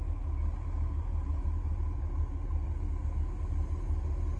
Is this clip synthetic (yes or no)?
no